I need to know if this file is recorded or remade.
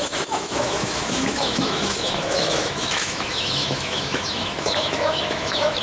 remade